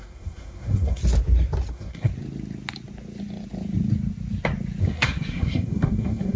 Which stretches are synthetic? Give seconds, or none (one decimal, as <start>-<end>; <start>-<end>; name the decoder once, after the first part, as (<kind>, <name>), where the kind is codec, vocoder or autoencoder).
0.0-1.0 (codec, SNAC); 1.7-2.1; 4.8-6.4

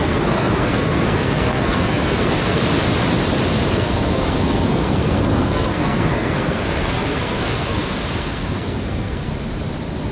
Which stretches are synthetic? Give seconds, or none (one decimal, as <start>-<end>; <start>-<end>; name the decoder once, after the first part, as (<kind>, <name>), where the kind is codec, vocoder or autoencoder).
0.0-2.6 (codec, SNAC); 3.7-9.3